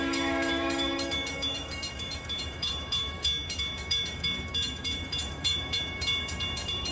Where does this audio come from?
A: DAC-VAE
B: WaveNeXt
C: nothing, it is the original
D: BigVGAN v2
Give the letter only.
A